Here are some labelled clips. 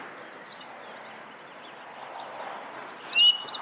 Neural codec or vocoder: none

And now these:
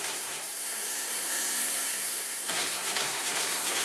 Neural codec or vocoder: codec, SNAC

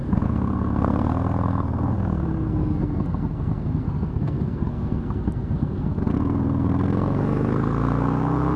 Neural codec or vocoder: codec, SNAC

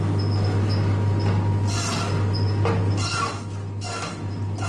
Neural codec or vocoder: none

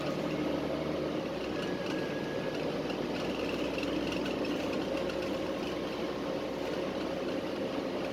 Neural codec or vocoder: none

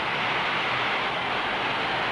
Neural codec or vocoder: none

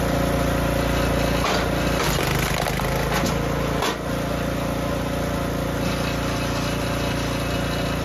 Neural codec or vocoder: none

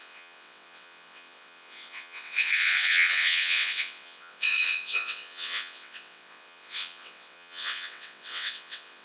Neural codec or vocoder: vocoder, WaveNeXt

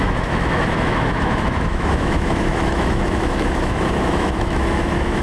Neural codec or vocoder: autoencoder, DAC-VAE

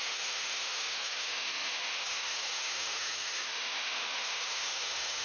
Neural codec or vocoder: autoencoder, DAC-VAE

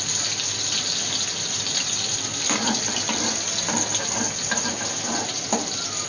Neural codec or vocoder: none